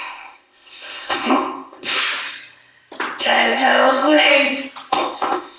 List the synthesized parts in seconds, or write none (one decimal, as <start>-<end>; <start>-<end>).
0.0-2.0; 3.2-4.3; 4.9-5.6

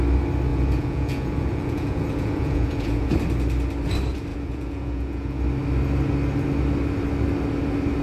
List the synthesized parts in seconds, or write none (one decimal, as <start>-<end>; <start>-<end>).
0.5-3.1; 4.3-5.4

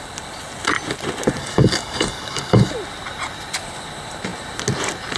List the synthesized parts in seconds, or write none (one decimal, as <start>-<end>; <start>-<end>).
1.4-2.7

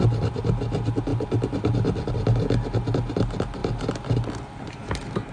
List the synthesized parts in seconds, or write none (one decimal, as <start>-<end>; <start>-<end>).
none

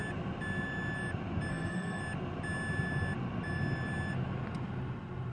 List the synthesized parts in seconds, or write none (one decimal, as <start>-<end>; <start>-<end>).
1.5-2.0

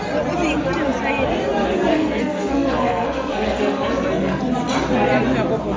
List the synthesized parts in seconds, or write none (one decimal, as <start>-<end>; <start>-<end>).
1.9-4.4